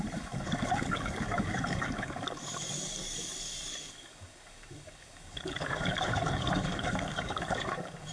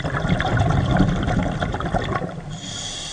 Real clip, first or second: second